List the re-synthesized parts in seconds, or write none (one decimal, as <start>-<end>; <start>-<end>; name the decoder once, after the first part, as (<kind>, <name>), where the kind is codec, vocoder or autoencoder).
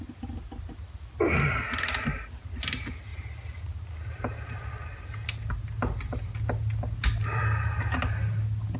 none